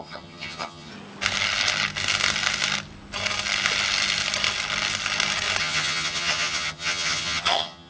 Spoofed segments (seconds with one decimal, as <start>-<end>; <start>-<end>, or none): 0.0-0.9; 5.6-7.9

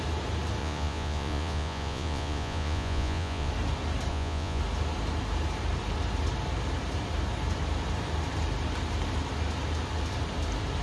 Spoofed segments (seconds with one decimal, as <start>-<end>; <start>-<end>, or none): 0.6-3.5; 4.1-4.6

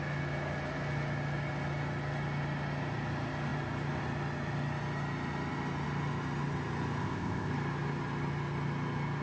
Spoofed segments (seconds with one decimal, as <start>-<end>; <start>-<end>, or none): 7.0-7.5

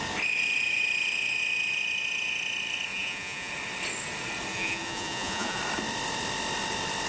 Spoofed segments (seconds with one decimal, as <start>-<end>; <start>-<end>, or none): 2.9-3.5; 4.5-5.6

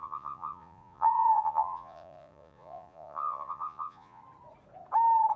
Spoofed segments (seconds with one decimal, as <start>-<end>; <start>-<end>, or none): 0.0-4.2